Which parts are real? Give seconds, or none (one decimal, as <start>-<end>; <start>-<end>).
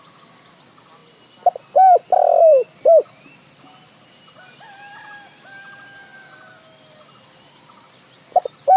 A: 0.0-1.0; 1.6-2.5; 3.6-8.8